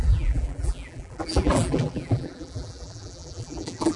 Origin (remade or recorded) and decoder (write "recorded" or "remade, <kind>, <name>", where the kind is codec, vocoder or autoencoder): remade, vocoder, BigVGAN v2